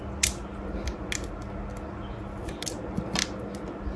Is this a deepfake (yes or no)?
no